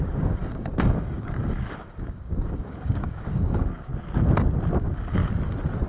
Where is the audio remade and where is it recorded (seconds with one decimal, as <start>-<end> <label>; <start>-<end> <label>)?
0.0-3.9 remade; 3.9-4.8 recorded; 4.8-5.2 remade; 5.2-5.9 recorded